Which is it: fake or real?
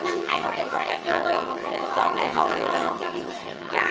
fake